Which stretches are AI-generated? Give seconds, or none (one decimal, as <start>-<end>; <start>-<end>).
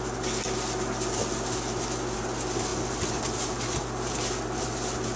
none